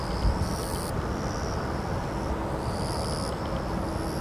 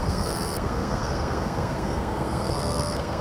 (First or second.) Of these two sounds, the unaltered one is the first